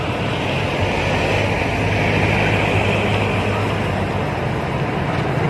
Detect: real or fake real